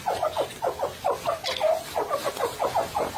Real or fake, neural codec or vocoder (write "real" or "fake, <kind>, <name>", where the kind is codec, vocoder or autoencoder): real